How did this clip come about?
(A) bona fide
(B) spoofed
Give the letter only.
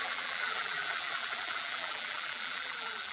B